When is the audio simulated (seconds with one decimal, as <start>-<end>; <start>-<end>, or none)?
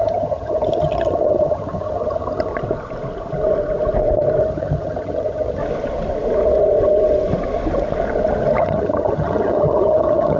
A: 0.0-2.5; 4.4-5.6; 8.6-10.4